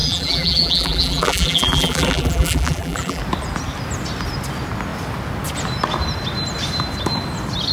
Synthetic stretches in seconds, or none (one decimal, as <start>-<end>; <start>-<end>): 0.0-3.2